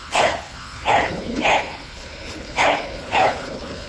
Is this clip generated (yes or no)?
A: yes